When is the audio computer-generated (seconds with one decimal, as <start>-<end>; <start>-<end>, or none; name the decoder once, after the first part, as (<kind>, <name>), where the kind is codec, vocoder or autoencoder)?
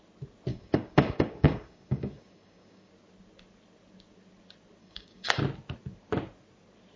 0.5-2.9 (codec, DAC); 4.8-5.4